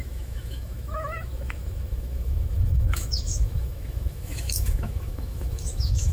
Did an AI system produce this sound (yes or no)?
yes